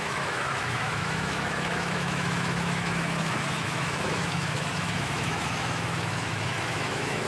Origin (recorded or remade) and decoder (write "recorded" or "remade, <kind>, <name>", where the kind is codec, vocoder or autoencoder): remade, autoencoder, DAC-VAE